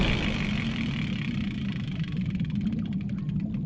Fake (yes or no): no